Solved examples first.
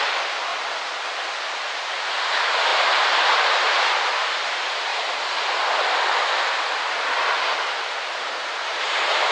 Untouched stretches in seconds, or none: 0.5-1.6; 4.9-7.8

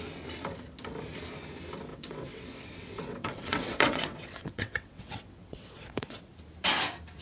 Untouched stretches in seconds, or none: 0.0-1.9; 6.2-7.2

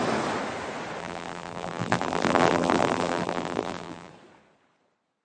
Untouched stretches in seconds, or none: 0.0-1.0; 4.1-5.2

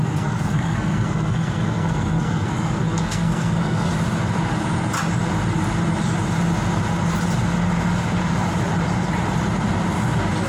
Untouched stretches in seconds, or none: 3.9-10.5

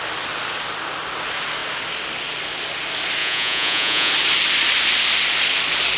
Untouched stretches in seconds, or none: 0.0-3.2; 4.1-6.0

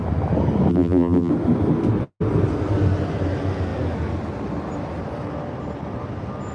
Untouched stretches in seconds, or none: 0.0-0.7; 1.3-6.5

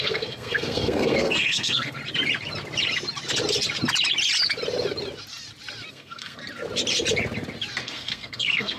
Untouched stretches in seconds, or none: 2.0-5.9; 6.4-7.8